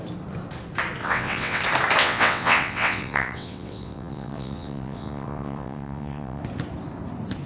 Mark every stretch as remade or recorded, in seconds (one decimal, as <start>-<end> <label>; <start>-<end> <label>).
0.0-1.0 recorded; 1.0-1.6 remade; 1.6-2.0 recorded; 2.0-6.4 remade; 6.4-7.5 recorded